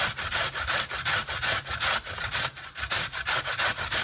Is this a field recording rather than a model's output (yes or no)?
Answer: yes